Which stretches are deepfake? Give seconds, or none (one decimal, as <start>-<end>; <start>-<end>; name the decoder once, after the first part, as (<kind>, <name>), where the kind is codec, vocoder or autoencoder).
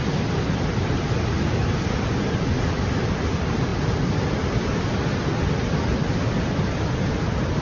none